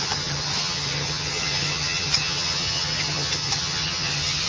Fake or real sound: fake